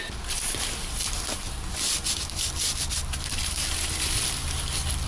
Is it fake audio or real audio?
real